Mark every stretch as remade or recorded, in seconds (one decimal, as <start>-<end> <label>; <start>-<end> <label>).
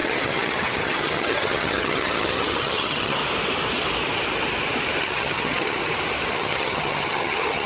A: 0.0-3.2 remade; 3.2-5.0 recorded; 5.0-5.8 remade; 5.8-6.3 recorded; 6.3-7.7 remade